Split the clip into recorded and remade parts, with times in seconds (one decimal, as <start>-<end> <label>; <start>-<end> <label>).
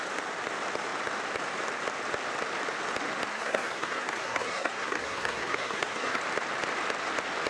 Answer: 0.0-3.3 recorded; 3.3-6.2 remade; 6.2-7.5 recorded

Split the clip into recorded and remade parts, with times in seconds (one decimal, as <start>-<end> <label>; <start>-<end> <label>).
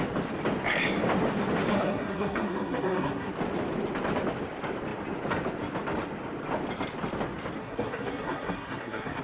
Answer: 0.0-1.7 recorded; 1.7-3.3 remade; 3.3-7.6 recorded; 7.6-9.2 remade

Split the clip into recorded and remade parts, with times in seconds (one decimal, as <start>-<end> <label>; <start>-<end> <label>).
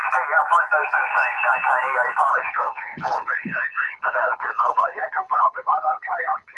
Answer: 0.0-2.3 recorded; 2.3-6.6 remade